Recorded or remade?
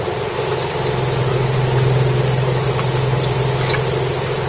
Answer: recorded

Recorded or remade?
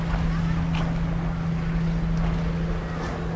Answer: recorded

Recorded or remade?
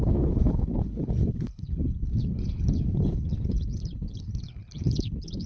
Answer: remade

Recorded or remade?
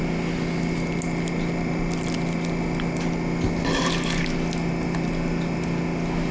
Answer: recorded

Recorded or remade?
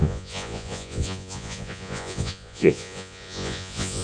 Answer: remade